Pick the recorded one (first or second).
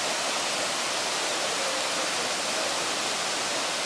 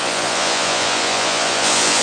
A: first